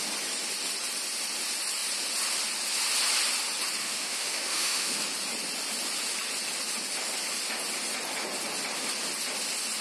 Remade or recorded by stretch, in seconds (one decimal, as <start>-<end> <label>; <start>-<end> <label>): 0.0-3.8 recorded; 3.8-5.0 remade; 5.0-9.8 recorded